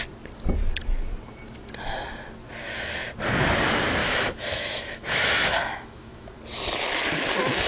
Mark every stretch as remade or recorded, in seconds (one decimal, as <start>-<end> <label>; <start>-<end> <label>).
0.0-4.0 recorded; 4.0-6.3 remade; 6.3-7.7 recorded